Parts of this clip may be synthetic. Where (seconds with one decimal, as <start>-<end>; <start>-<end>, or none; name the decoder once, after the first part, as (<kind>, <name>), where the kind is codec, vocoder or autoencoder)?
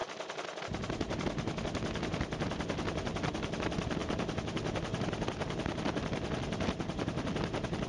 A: none